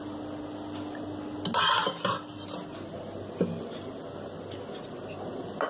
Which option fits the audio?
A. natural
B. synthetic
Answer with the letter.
A